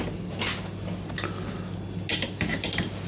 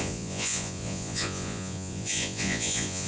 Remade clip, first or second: second